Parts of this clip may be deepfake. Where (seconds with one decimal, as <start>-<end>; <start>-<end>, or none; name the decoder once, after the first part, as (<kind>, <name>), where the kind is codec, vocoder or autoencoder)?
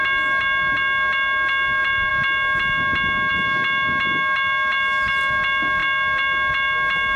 none